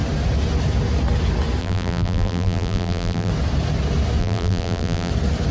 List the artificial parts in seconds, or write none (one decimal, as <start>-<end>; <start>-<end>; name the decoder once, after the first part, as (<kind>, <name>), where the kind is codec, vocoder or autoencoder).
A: 1.6-3.3 (vocoder, BigVGAN v2); 4.2-5.1